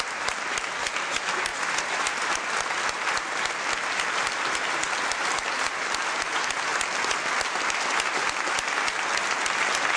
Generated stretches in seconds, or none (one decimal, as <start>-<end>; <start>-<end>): none